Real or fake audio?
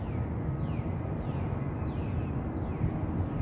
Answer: real